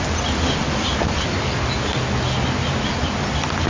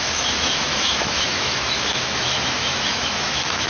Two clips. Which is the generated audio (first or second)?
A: second